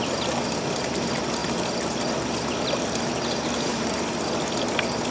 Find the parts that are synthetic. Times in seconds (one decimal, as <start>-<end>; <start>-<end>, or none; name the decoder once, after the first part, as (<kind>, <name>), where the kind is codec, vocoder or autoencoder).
none